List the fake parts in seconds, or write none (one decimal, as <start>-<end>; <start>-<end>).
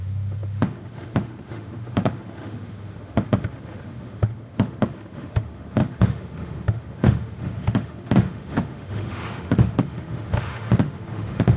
0.0-11.6